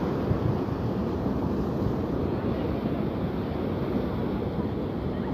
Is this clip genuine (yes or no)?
yes